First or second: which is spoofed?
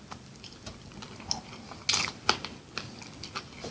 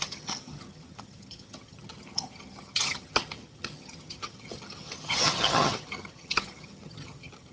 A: second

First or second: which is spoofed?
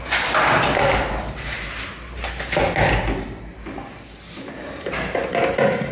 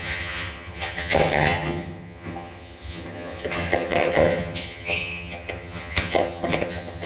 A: second